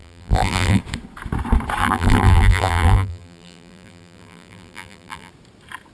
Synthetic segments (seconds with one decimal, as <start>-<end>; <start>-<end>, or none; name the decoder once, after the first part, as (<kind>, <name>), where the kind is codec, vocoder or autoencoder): 0.0-0.8 (vocoder, BigVGAN v2); 1.8-5.3